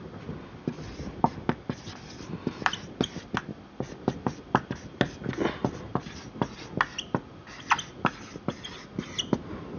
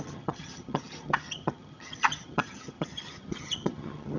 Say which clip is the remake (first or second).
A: second